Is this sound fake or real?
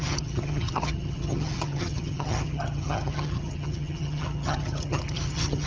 fake